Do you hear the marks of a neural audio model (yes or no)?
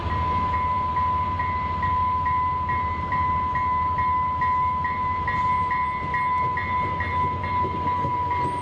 no